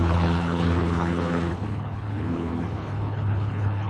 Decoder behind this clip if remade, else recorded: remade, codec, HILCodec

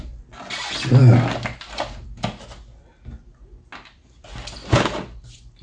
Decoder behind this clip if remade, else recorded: recorded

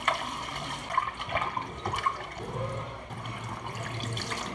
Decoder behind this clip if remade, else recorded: remade, vocoder, BigVGAN v2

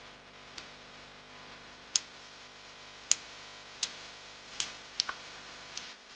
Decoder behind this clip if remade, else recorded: recorded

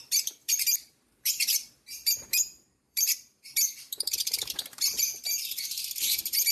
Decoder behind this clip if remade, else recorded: remade, vocoder, BigVGAN v2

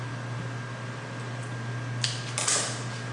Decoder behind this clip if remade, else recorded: recorded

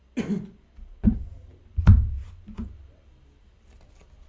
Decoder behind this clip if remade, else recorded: recorded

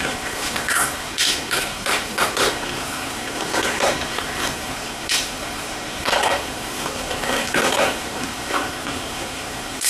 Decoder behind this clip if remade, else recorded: remade, codec, SNAC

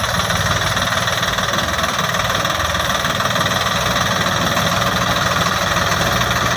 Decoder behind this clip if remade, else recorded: recorded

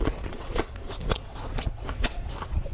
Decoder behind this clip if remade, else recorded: remade, vocoder, Vocos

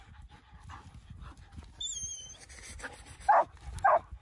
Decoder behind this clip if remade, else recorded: recorded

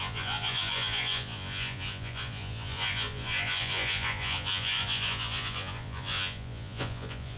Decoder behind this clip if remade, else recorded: remade, vocoder, Vocos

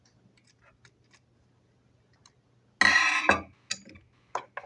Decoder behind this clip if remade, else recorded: recorded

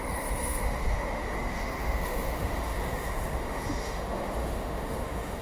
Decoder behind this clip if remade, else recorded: remade, autoencoder, DAC-VAE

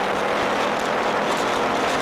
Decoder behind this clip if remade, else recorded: recorded